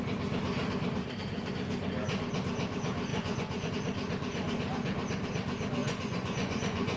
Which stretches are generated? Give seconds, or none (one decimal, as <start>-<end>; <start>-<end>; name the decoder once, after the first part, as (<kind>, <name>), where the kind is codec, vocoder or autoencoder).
3.1-3.7 (vocoder, Vocos); 5.8-7.0